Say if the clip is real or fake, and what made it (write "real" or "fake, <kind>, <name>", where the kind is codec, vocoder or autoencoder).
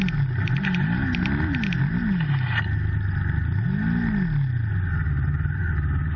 real